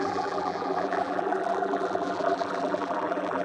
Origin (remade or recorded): remade